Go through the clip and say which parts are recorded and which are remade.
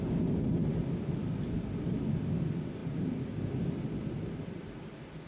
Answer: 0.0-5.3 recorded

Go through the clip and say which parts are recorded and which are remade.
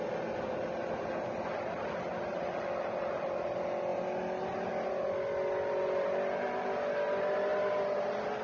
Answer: 0.0-8.4 recorded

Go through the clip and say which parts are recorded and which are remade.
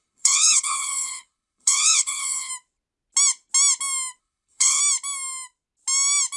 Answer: 0.0-2.5 remade; 2.5-4.2 recorded; 4.2-4.8 remade; 4.8-6.4 recorded